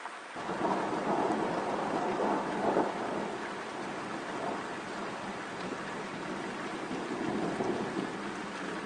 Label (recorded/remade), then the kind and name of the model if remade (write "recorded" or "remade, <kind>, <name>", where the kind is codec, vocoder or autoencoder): recorded